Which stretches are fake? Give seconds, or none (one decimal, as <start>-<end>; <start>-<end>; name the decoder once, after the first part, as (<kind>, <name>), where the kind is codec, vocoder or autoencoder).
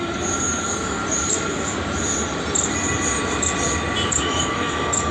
0.0-1.0 (codec, DAC); 4.1-5.1